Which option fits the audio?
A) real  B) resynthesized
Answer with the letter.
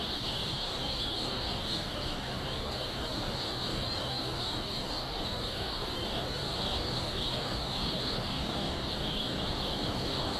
B